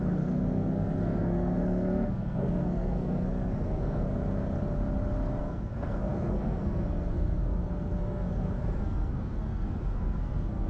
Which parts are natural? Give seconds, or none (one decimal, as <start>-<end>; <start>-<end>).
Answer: 4.1-5.4